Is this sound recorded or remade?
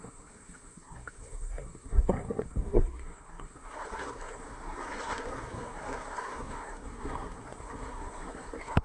remade